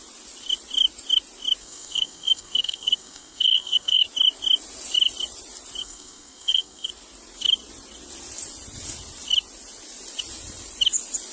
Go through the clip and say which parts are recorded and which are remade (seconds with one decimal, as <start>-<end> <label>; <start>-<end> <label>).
0.0-1.6 recorded; 1.6-4.0 remade; 4.0-5.8 recorded; 5.8-6.9 remade; 6.9-11.3 recorded